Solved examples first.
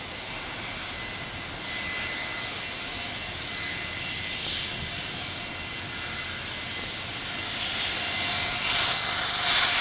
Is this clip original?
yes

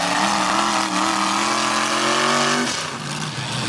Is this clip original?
yes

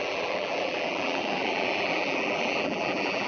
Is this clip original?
no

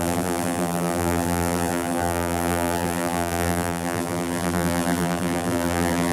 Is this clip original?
no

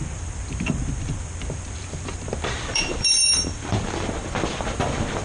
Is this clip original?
no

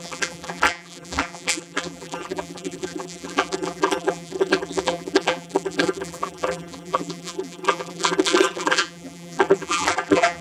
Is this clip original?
no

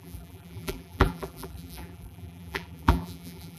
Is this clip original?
no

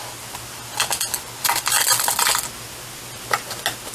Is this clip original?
yes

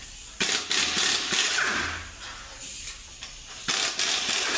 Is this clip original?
yes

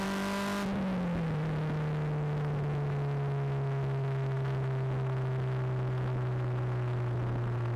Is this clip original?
yes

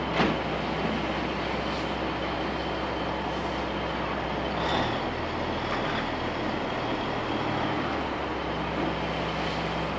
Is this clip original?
yes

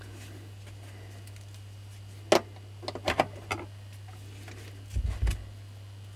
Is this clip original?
yes